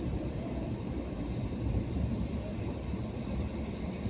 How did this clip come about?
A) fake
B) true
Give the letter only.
B